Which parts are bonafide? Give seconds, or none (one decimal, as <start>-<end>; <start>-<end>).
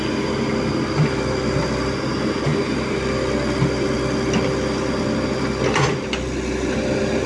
0.0-7.3